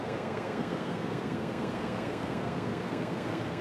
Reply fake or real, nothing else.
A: fake